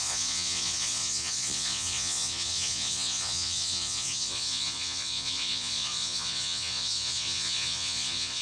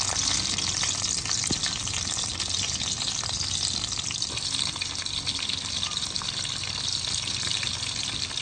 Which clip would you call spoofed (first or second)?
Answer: first